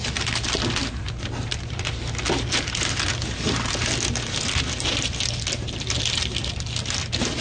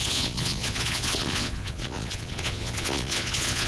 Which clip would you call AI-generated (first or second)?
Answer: second